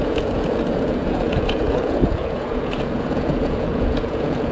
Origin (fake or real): fake